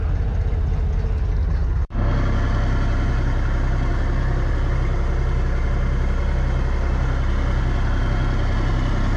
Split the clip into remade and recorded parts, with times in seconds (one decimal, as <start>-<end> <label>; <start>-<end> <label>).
0.0-9.2 recorded